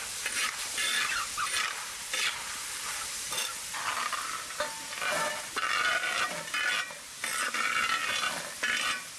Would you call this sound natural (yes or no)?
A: yes